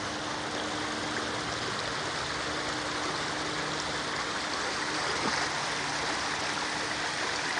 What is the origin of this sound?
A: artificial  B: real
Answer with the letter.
B